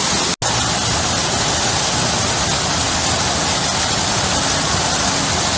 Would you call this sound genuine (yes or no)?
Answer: yes